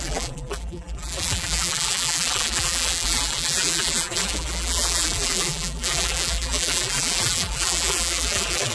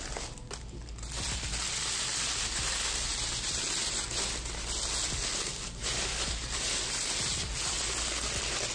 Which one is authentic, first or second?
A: second